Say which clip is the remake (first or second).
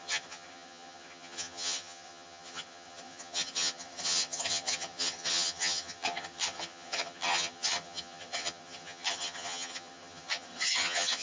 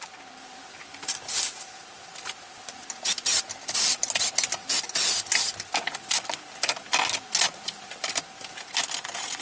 first